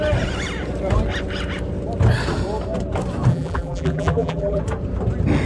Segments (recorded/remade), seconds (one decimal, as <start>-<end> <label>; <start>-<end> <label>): 0.0-3.3 recorded; 3.3-4.6 remade; 4.6-5.5 recorded

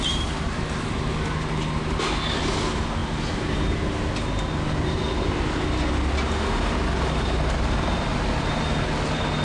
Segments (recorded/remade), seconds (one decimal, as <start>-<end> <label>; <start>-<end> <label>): 0.0-9.4 recorded

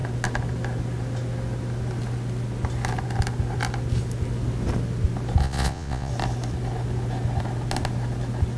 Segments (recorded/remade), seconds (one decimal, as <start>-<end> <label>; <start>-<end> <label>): 0.0-5.4 recorded; 5.4-6.1 remade; 6.1-8.6 recorded

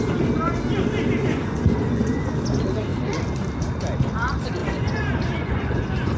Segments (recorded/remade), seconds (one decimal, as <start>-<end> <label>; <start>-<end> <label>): 0.0-1.3 recorded; 1.3-2.3 remade; 2.3-4.6 recorded; 4.6-5.8 remade; 5.8-6.2 recorded

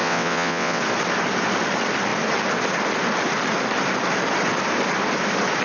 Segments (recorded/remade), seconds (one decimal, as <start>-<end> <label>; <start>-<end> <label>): 0.0-0.8 remade; 0.8-5.6 recorded

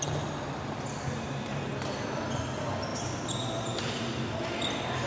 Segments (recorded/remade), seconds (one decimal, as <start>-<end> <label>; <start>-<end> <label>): 0.0-5.1 recorded

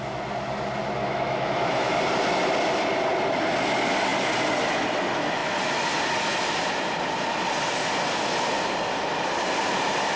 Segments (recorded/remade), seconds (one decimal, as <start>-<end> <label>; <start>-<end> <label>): 0.0-1.0 recorded; 1.0-2.0 remade; 2.0-10.2 recorded

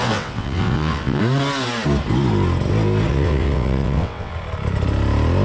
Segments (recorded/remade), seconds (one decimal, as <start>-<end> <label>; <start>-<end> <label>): 0.0-1.2 remade; 1.2-3.1 recorded; 3.1-4.3 remade; 4.3-5.4 recorded